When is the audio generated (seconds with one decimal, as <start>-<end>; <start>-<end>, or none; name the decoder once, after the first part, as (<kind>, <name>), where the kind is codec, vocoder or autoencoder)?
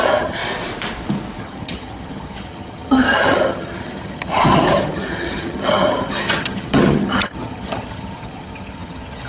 0.0-0.4 (vocoder, HiFi-GAN); 1.4-9.3